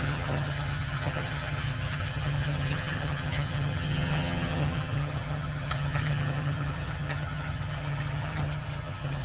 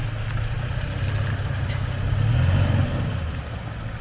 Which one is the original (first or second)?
second